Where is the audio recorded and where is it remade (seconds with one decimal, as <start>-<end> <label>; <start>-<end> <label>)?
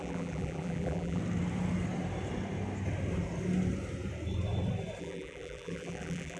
0.0-1.2 remade; 1.2-5.0 recorded; 5.0-6.4 remade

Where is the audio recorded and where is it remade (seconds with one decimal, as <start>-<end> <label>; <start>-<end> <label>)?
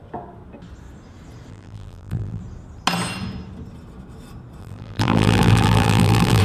0.0-1.5 recorded; 1.5-2.4 remade; 2.4-4.6 recorded; 4.6-6.4 remade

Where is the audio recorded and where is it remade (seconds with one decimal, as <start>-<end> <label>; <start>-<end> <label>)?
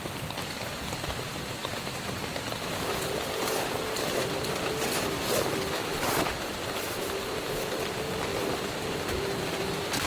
0.0-10.1 remade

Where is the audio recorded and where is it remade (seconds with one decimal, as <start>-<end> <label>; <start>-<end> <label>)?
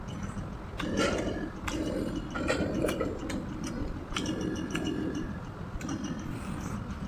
0.0-3.8 recorded; 3.8-6.5 remade; 6.5-7.1 recorded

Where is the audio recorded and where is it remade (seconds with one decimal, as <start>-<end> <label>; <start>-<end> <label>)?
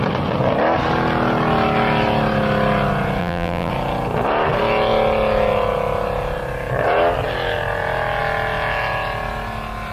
0.0-3.2 recorded; 3.2-3.7 remade; 3.7-9.9 recorded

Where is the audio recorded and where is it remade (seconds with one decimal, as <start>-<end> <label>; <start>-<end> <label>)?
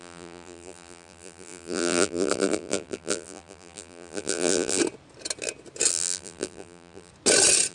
0.0-4.8 remade; 4.8-5.9 recorded; 5.9-7.1 remade; 7.1-7.7 recorded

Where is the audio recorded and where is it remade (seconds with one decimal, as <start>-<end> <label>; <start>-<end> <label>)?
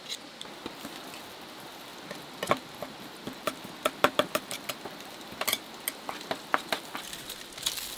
0.0-1.9 recorded; 1.9-6.7 remade; 6.7-8.0 recorded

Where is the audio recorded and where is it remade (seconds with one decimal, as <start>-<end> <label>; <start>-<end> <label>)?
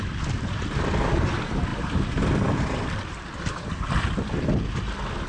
0.0-1.7 recorded; 1.7-3.6 remade; 3.6-5.3 recorded